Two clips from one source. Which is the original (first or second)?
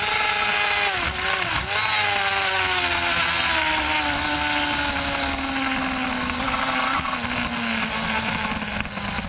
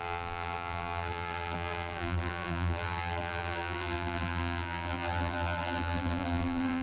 first